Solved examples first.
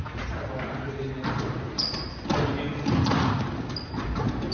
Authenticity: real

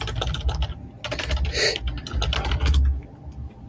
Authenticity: real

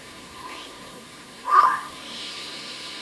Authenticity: fake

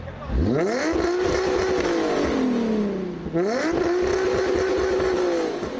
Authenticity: real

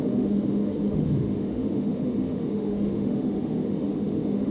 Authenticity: fake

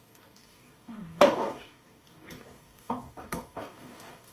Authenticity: fake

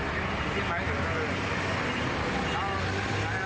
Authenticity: real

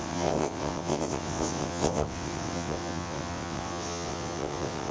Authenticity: fake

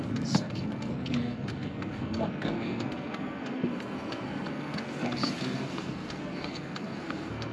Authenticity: fake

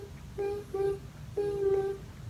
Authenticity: real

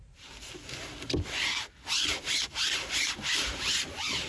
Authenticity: real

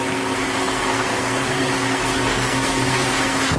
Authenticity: fake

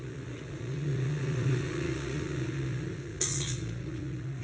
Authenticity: fake